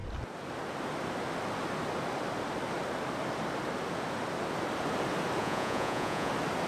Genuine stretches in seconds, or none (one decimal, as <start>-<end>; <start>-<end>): 0.0-5.4; 6.3-6.7